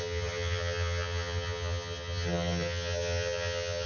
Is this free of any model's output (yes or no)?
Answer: no